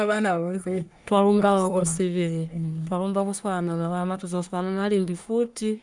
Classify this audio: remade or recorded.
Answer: remade